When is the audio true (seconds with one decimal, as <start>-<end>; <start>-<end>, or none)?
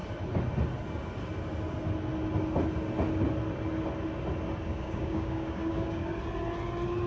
0.0-4.7; 6.1-7.1